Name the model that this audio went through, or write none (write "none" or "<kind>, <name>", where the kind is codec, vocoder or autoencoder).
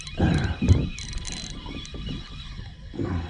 none